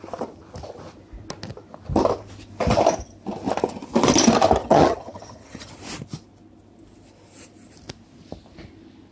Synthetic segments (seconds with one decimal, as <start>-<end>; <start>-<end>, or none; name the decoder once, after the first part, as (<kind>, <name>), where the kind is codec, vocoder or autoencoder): 4.6-5.7 (vocoder, HiFi-GAN)

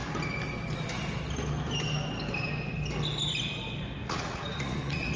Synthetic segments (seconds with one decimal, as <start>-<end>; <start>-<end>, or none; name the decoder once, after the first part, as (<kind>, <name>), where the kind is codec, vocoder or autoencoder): 4.0-5.2 (vocoder, Vocos)

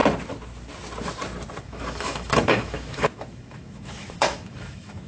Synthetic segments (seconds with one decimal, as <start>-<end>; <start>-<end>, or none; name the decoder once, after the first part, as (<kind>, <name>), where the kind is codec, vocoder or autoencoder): 1.6-5.1 (autoencoder, DAC-VAE)

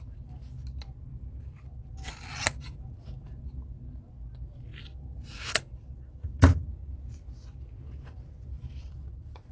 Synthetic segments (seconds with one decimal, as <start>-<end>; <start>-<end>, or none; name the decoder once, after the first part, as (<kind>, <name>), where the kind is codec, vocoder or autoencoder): none

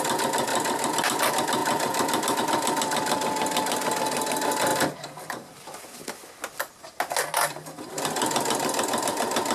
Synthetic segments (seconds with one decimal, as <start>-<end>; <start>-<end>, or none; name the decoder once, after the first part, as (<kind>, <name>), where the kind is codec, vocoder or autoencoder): none

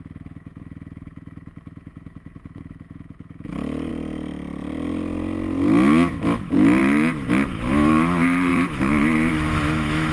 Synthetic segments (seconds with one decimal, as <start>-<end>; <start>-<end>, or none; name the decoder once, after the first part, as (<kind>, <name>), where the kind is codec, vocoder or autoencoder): 0.0-3.9 (autoencoder, DAC-VAE); 6.1-10.1